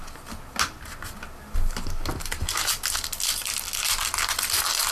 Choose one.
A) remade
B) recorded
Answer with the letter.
B